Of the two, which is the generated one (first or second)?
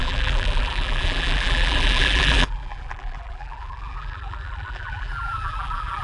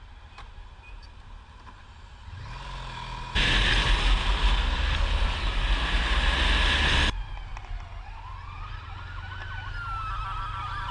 first